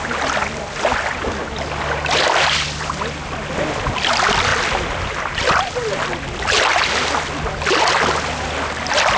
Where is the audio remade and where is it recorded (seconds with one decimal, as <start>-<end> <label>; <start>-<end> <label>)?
0.0-9.2 recorded